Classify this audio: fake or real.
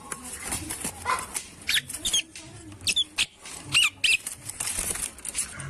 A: real